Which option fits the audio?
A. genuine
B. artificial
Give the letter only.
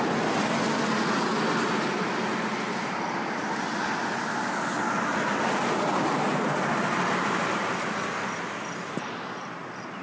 A